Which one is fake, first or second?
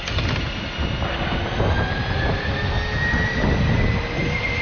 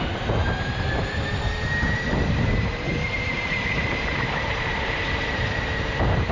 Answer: second